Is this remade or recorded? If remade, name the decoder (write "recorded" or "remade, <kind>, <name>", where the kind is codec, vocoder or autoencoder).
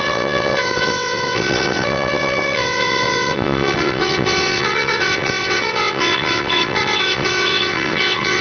remade, vocoder, WaveNeXt